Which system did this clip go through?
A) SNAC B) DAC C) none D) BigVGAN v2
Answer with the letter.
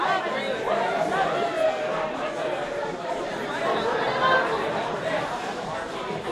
C